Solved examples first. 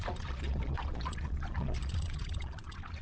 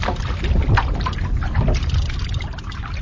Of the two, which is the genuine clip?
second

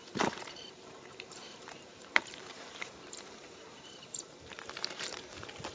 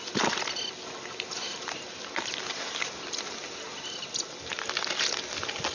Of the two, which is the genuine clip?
second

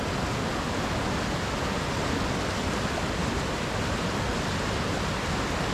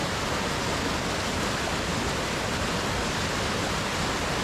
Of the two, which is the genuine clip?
first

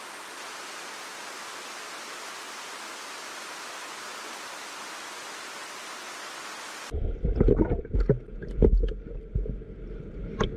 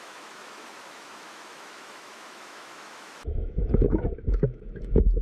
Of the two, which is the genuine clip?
first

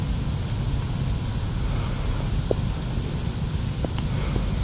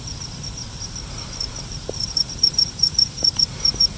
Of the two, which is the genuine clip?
first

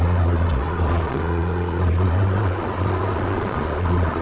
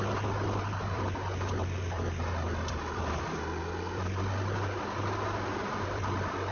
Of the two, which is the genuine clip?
second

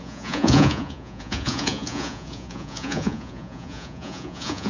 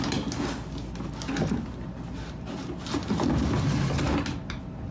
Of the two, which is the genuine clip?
second